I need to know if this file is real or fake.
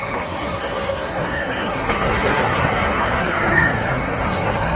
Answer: fake